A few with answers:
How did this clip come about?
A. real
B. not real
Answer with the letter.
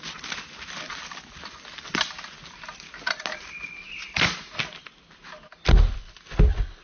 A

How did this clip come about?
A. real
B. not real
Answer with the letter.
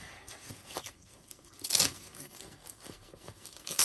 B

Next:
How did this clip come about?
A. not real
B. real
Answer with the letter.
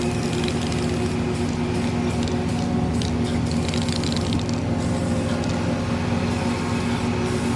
B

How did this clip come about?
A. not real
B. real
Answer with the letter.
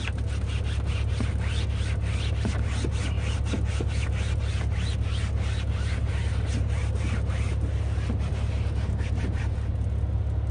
B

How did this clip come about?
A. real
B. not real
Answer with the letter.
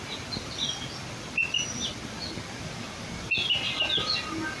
A